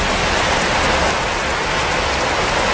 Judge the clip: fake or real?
real